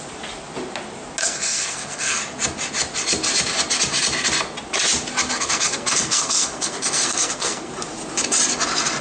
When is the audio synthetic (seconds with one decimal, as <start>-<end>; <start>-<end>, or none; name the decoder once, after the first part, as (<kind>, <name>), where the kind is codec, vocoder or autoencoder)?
1.2-2.2 (codec, SNAC); 5.3-7.7